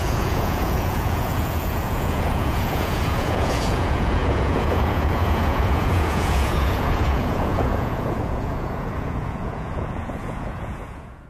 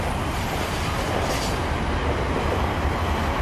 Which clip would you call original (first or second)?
second